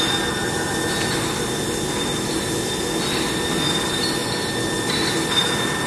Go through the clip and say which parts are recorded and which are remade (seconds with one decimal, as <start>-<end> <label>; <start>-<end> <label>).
0.0-5.9 recorded